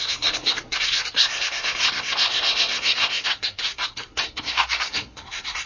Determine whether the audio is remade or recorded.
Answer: remade